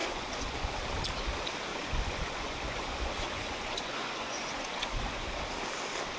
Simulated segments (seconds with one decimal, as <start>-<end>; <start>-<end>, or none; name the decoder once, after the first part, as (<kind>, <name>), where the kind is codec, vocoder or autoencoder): 0.0-0.7 (vocoder, Vocos); 1.7-5.4